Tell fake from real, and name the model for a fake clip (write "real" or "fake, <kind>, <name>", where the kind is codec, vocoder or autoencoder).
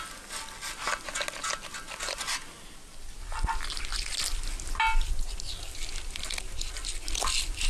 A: real